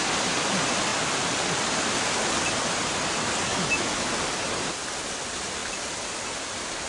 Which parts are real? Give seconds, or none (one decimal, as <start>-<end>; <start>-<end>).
0.0-3.5; 4.1-6.9